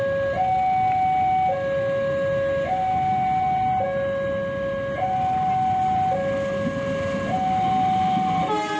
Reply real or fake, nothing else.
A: real